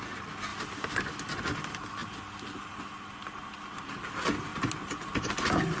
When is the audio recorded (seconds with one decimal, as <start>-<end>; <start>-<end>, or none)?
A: 0.0-5.8